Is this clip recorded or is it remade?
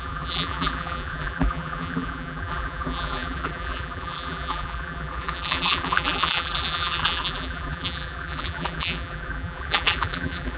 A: remade